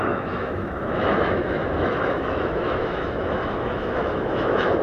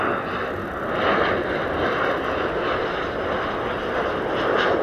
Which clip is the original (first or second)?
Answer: second